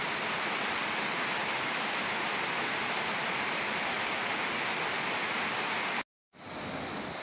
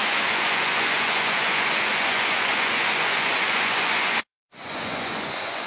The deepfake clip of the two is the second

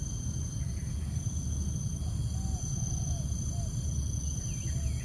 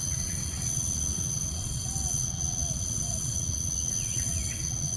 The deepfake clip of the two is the second